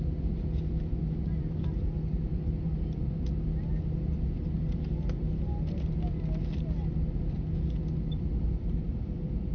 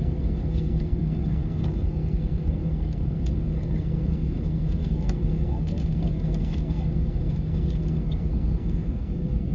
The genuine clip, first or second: first